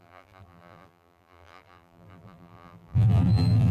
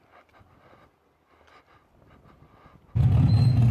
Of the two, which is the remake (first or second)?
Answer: first